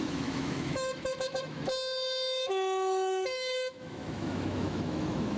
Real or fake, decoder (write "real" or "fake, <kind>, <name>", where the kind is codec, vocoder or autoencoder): fake, autoencoder, DAC-VAE